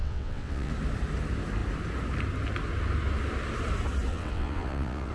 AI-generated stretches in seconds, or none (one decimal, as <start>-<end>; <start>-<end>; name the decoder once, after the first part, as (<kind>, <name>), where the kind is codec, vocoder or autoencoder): 0.0-0.7 (vocoder, WaveNeXt); 4.1-5.1